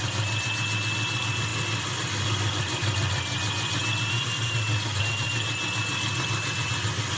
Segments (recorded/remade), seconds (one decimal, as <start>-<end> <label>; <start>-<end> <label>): 0.0-7.2 recorded